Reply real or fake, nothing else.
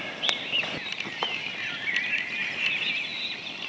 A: real